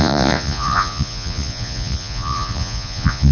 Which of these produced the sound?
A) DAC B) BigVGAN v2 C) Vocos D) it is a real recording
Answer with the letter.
C